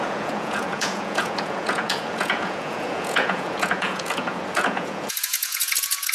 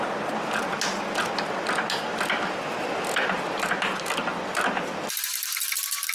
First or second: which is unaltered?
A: second